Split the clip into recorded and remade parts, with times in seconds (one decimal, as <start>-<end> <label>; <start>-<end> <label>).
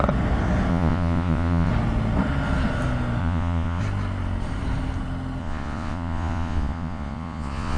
0.0-0.7 recorded; 0.7-1.7 remade; 1.7-3.2 recorded; 3.2-3.8 remade; 3.8-5.4 recorded; 5.4-7.8 remade